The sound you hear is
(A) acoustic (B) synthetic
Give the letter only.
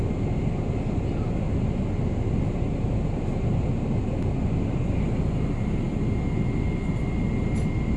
A